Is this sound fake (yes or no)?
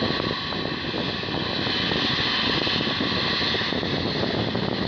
no